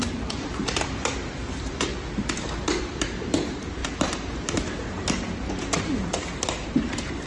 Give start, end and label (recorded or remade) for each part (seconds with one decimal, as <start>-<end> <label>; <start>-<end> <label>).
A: 0.0-1.9 remade; 1.9-2.8 recorded; 2.8-7.3 remade